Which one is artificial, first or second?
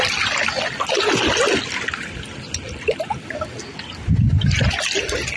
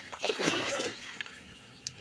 second